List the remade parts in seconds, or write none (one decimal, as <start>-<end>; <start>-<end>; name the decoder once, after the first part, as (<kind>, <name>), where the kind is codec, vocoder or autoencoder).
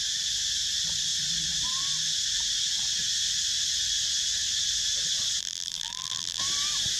5.4-6.4 (vocoder, BigVGAN v2)